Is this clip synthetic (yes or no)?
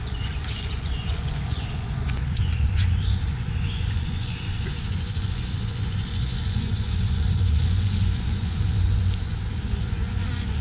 yes